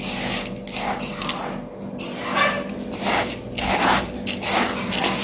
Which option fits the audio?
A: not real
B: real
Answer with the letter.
B